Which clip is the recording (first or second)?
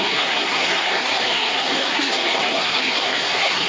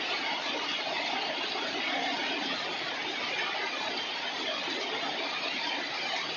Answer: second